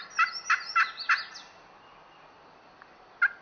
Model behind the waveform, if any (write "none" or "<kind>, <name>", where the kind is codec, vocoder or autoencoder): none